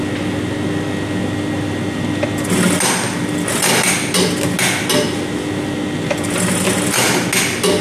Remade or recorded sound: recorded